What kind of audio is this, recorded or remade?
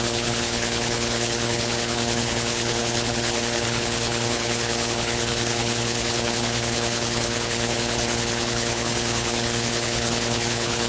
remade